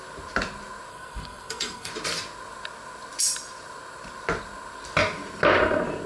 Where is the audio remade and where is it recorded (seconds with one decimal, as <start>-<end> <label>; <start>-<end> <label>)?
0.0-0.9 recorded; 0.9-1.9 remade; 1.9-6.1 recorded